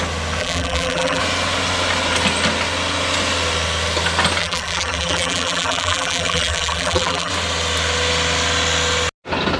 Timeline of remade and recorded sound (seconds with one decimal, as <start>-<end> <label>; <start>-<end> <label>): 0.0-0.4 recorded; 0.4-1.2 remade; 1.2-4.4 recorded; 4.4-7.3 remade; 7.3-9.6 recorded